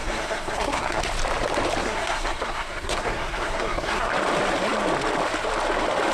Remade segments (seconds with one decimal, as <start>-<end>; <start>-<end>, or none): 0.0-1.0; 1.8-4.1